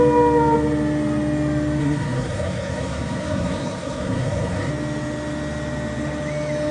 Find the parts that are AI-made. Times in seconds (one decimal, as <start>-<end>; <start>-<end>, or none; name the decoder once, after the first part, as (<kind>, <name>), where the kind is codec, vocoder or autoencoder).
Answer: 1.8-4.7 (codec, SNAC)